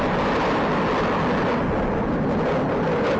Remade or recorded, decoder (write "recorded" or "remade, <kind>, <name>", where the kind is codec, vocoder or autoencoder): recorded